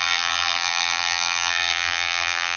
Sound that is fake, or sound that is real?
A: fake